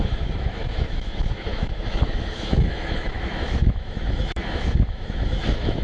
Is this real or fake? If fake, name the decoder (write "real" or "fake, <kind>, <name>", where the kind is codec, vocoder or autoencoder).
fake, autoencoder, DAC-VAE